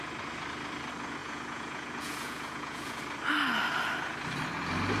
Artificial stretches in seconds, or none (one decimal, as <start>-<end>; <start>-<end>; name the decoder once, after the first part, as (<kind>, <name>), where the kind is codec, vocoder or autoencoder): 1.2-3.0 (vocoder, Vocos)